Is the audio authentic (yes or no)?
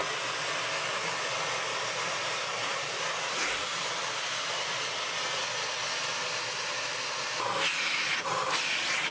yes